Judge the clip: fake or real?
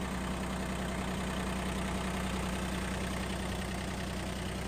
real